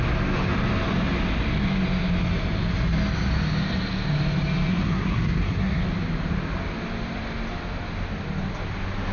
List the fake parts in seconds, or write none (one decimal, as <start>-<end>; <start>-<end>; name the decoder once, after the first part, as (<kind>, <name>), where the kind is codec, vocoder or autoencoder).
4.7-5.8 (codec, SNAC)